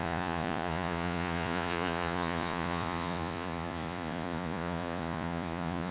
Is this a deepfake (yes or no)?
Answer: yes